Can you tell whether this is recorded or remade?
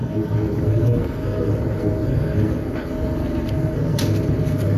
remade